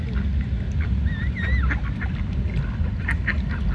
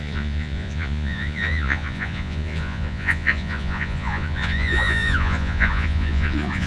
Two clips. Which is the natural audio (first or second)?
first